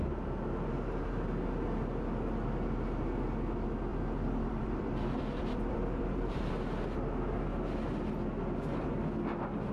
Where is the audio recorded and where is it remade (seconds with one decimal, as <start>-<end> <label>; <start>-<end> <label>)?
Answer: 0.0-3.9 recorded; 3.9-6.5 remade; 6.5-9.7 recorded